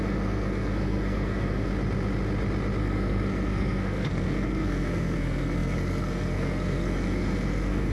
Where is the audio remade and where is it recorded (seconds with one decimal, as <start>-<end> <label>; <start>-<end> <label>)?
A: 0.0-1.7 remade; 1.7-2.8 recorded; 2.8-7.9 remade